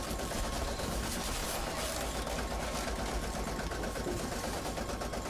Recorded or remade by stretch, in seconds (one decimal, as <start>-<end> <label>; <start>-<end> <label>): 0.0-5.3 recorded